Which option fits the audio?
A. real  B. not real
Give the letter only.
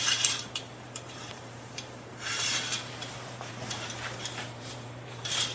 B